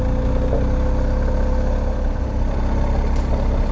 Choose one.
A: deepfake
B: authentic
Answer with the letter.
B